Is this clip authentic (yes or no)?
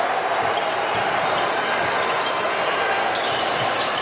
yes